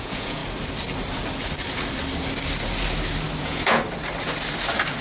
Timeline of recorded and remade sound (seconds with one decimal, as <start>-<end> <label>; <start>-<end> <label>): 0.0-0.4 remade; 0.4-3.4 recorded; 3.4-3.8 remade; 3.8-5.0 recorded